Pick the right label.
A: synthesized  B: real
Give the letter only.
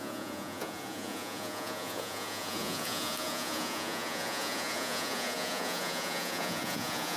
A